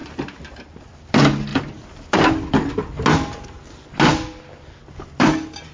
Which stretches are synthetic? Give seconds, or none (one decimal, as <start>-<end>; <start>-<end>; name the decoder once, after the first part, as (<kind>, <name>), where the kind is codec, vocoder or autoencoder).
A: 0.0-0.8 (vocoder, BigVGAN v2)